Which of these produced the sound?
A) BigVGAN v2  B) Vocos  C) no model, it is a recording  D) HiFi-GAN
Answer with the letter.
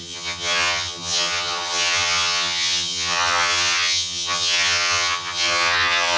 D